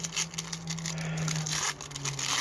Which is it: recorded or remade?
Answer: recorded